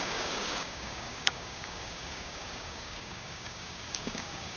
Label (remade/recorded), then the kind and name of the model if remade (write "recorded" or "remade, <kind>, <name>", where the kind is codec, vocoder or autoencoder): remade, codec, DAC